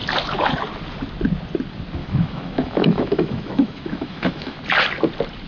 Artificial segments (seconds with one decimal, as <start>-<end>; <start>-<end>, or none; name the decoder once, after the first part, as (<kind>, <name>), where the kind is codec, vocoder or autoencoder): 2.0-4.6 (autoencoder, DAC-VAE)